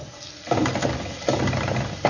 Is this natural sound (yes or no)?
yes